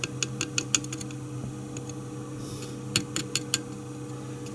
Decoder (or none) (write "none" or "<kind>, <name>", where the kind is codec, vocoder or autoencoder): none